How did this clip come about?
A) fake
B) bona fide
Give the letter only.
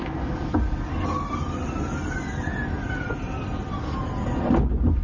B